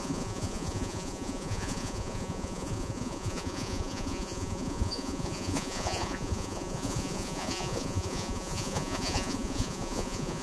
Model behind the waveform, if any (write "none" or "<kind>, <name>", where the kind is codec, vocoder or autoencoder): vocoder, Vocos